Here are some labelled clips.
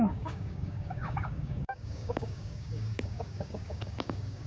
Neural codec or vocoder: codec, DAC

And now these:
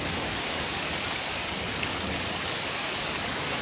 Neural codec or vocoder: codec, DAC